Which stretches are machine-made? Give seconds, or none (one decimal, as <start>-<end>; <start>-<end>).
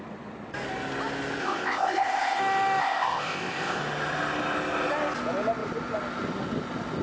1.4-2.4; 2.8-3.8